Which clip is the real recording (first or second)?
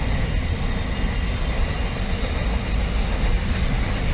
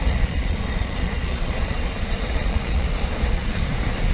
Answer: first